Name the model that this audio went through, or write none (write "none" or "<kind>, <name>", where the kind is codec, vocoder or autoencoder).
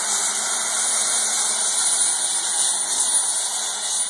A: none